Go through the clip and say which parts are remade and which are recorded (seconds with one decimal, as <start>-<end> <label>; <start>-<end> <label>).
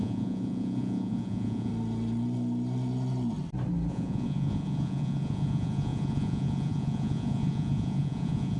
0.0-1.7 remade; 1.7-3.9 recorded; 3.9-8.6 remade